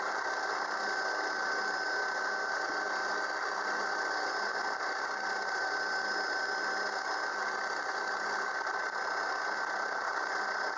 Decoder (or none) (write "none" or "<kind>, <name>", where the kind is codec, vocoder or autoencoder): none